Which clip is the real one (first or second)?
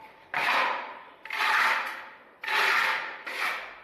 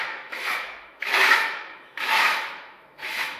first